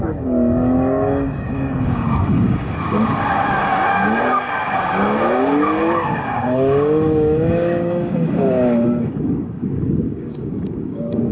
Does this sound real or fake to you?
fake